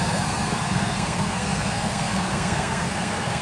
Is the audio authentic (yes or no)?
no